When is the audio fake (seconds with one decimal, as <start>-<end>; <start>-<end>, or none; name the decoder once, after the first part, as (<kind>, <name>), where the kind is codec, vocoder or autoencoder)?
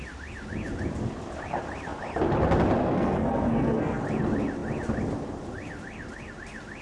2.8-4.0 (codec, SNAC)